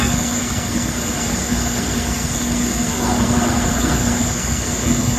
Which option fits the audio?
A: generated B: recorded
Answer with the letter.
A